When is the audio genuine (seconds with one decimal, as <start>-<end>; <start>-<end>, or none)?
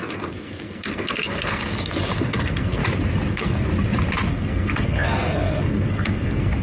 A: 2.8-3.3; 3.7-4.3